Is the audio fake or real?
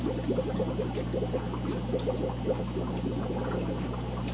real